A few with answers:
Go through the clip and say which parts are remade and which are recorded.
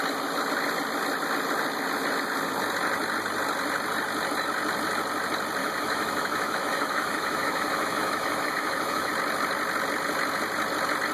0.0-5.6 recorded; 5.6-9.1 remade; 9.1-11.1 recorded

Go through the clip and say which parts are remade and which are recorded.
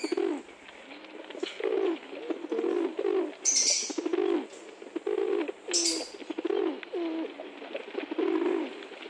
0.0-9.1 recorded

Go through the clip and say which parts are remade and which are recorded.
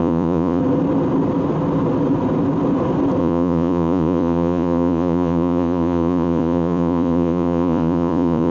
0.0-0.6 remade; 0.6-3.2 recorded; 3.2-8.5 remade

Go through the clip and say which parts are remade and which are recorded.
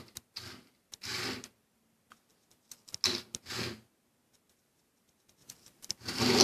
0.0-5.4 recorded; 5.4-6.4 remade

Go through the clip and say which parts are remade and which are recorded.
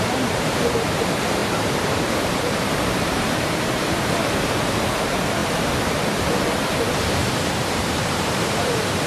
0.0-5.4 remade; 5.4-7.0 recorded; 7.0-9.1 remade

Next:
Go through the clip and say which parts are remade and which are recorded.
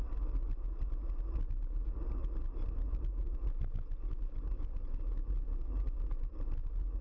0.0-7.0 recorded